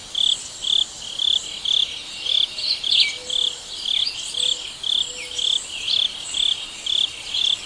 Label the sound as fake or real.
real